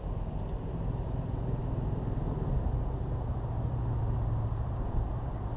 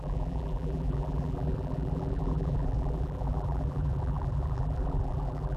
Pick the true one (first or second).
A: first